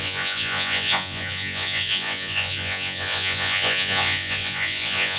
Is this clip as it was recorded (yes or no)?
no